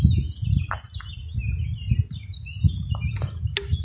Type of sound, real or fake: real